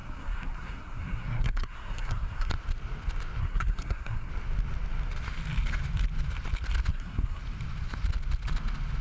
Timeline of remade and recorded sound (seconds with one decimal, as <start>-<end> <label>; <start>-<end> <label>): 0.0-2.5 remade; 2.5-3.4 recorded; 3.4-4.3 remade; 4.3-6.9 recorded; 6.9-7.4 remade; 7.4-9.0 recorded